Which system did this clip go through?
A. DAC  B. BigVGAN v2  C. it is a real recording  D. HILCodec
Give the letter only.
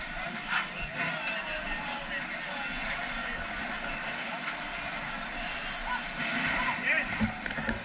C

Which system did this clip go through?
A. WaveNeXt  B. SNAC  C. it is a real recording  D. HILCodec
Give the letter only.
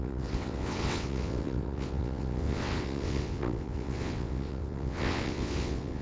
A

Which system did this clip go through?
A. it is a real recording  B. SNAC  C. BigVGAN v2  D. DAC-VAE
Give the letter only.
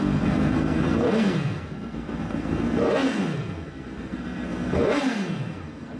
B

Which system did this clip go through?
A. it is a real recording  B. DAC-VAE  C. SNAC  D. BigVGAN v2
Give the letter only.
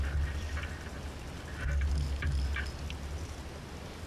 A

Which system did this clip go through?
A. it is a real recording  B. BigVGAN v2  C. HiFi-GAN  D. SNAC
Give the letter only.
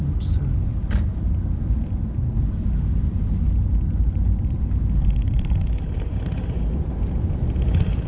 A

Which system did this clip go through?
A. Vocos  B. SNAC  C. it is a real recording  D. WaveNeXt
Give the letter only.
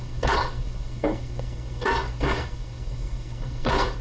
B